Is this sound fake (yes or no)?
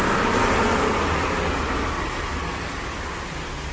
no